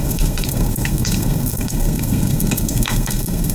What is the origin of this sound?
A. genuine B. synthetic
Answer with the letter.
B